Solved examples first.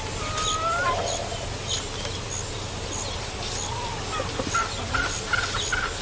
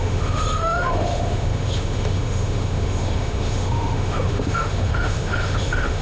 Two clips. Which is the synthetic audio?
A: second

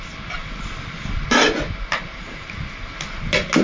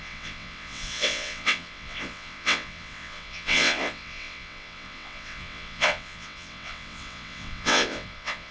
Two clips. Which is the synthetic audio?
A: second